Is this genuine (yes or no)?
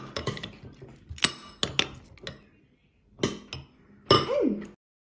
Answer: yes